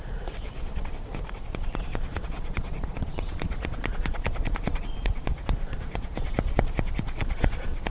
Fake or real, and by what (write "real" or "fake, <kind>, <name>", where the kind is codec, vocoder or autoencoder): fake, vocoder, Vocos